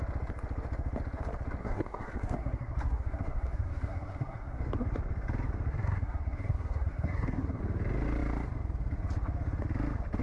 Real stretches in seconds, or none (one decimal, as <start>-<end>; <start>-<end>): 0.0-1.6; 4.7-5.7; 7.6-10.2